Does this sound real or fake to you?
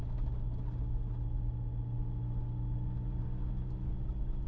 real